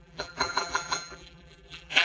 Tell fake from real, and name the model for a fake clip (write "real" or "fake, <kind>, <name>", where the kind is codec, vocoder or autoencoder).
fake, vocoder, BigVGAN v2